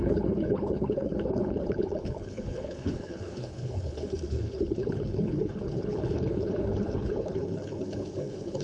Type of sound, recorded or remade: remade